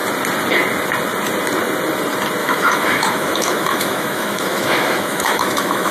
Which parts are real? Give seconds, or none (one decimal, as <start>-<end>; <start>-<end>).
0.0-2.4